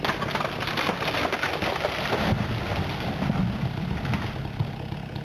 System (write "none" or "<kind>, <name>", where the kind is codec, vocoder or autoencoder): none